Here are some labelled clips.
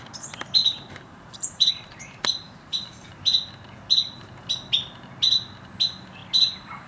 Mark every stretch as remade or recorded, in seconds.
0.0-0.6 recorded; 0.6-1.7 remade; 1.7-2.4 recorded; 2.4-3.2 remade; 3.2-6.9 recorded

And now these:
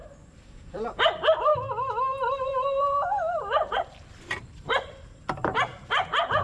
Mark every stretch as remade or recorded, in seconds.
0.0-1.5 remade; 1.5-4.1 recorded; 4.1-6.4 remade

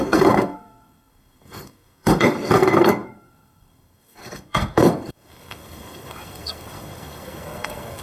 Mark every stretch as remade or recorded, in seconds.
0.0-8.0 remade